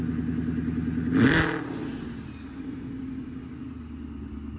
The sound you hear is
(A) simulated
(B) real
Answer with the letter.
B